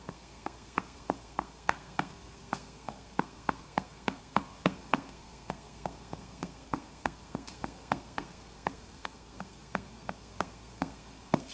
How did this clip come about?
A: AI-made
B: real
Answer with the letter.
A